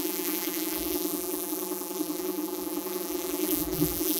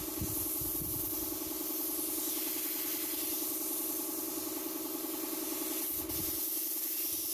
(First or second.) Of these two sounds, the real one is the second